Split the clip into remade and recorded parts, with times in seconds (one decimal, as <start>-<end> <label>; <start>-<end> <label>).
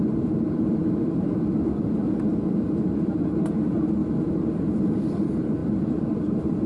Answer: 0.0-4.0 remade; 4.0-4.9 recorded; 4.9-6.7 remade